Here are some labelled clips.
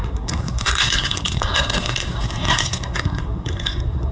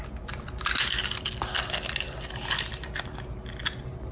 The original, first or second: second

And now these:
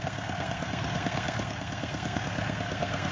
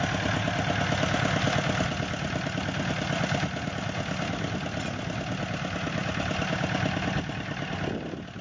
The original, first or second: second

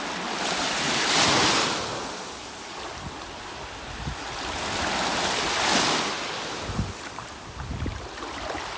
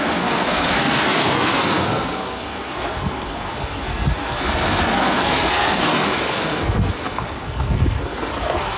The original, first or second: first